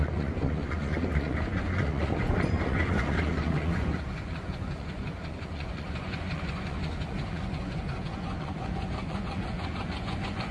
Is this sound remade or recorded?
remade